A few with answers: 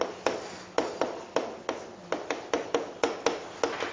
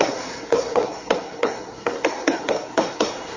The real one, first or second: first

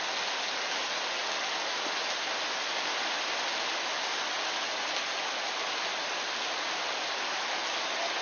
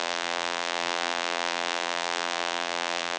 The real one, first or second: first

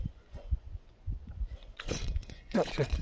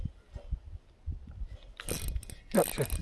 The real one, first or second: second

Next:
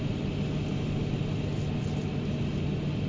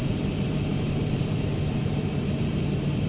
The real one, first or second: first